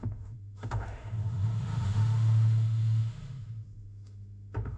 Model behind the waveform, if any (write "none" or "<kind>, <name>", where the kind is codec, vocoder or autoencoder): autoencoder, DAC-VAE